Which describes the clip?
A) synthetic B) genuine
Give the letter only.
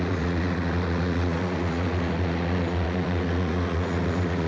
A